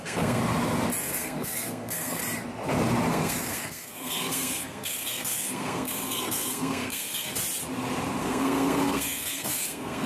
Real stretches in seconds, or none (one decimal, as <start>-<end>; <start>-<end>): 0.4-1.0; 2.2-3.1; 7.3-8.2